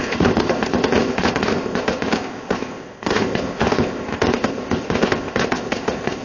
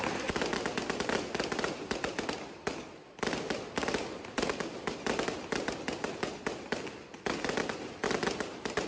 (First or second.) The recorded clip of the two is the second